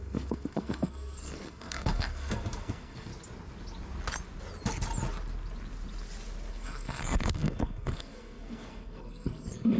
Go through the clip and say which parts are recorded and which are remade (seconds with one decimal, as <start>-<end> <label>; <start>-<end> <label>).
0.0-3.1 remade; 3.1-6.5 recorded; 6.5-9.8 remade